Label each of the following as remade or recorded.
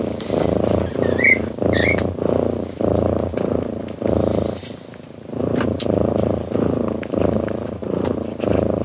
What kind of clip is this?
remade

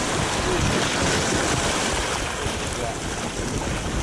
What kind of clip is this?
recorded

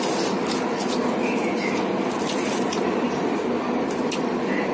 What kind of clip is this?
recorded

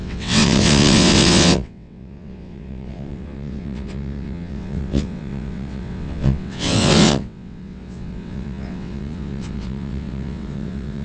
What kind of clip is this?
remade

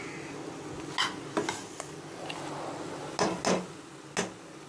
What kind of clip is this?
recorded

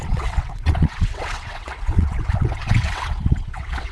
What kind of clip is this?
remade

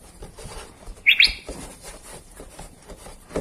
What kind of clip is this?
remade